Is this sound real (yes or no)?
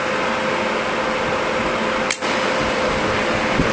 yes